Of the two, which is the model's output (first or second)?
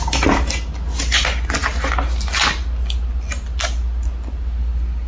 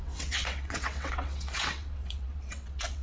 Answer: second